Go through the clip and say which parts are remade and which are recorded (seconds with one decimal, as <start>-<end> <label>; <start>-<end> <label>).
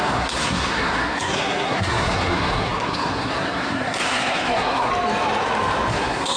0.0-4.9 remade; 4.9-5.9 recorded; 5.9-6.4 remade